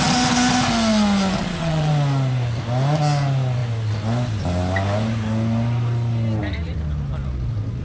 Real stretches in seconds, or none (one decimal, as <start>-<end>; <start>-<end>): 0.0-1.4; 1.9-7.8